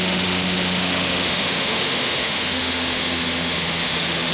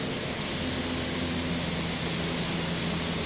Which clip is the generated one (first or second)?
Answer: first